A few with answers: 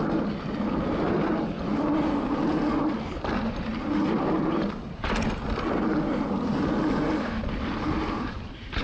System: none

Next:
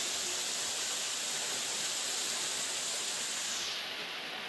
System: none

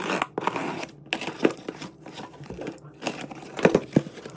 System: none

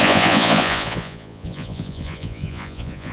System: vocoder, Vocos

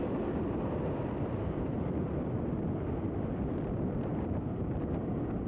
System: none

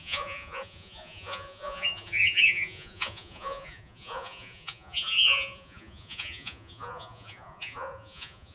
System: vocoder, Vocos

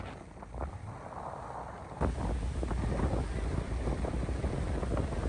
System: none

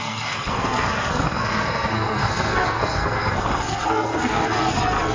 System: codec, SNAC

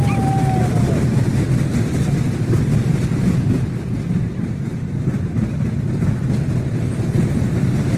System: none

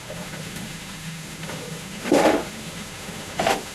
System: autoencoder, DAC-VAE